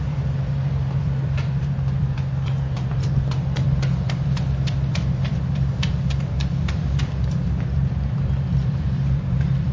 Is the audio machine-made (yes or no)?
yes